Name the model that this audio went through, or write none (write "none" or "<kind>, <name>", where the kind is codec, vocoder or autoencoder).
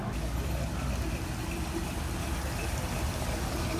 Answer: none